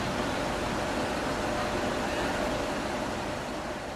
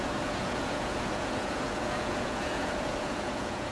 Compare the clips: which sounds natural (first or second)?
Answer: first